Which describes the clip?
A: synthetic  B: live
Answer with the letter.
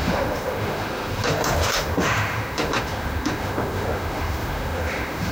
A